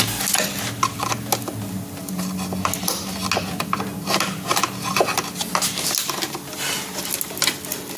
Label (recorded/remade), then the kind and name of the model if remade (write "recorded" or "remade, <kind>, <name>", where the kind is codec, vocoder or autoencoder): recorded